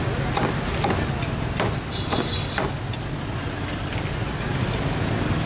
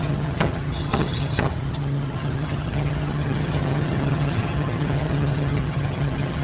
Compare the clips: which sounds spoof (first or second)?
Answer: second